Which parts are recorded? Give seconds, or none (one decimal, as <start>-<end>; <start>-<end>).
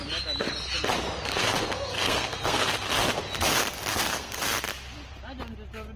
0.0-1.3; 2.9-3.9; 4.5-6.0